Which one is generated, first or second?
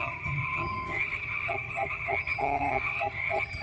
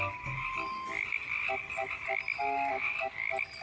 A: first